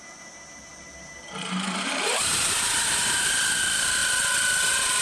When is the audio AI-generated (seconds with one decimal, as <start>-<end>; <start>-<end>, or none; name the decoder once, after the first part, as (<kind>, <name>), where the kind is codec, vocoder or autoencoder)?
0.0-4.0 (vocoder, BigVGAN v2)